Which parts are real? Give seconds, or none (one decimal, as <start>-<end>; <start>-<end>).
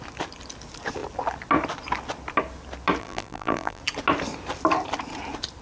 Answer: 0.0-3.0; 3.8-5.6